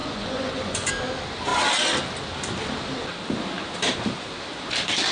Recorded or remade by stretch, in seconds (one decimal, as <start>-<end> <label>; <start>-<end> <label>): 0.0-0.9 remade; 0.9-5.1 recorded